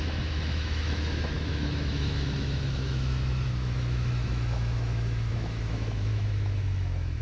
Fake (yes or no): yes